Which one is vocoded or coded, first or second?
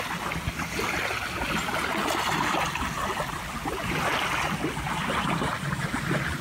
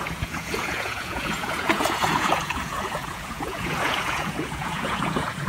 second